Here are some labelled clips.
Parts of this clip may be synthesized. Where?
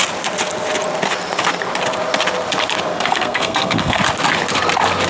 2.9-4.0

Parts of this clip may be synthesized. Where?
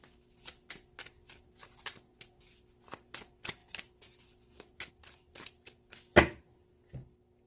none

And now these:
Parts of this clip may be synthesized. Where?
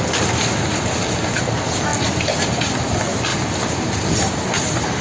none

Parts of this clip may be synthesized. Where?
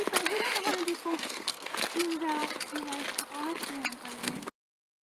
1.0-1.7; 4.2-5.0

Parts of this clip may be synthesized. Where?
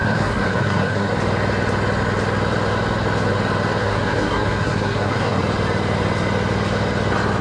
0.0-1.1; 3.8-5.4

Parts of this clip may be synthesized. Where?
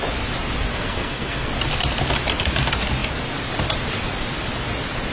0.7-1.5